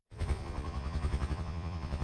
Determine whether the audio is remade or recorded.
remade